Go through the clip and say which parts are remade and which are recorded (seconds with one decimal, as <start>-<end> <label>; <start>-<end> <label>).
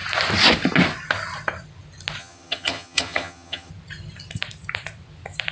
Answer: 0.0-2.2 recorded; 2.2-3.7 remade; 3.7-5.5 recorded